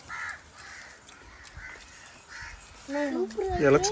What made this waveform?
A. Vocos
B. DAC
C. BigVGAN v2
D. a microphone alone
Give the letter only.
D